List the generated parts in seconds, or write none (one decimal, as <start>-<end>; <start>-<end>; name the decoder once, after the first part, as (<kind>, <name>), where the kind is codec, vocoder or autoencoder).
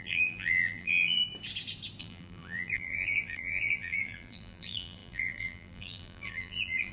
0.0-1.2 (vocoder, BigVGAN v2); 2.0-6.9